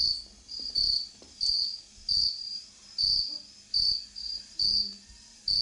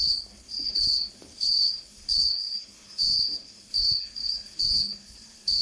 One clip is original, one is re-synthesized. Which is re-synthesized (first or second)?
second